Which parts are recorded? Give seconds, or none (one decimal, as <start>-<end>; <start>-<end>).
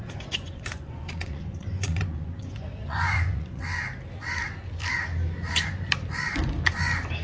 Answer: 3.6-7.2